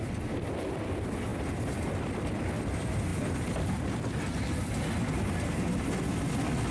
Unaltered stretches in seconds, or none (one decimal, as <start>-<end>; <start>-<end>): 0.0-6.7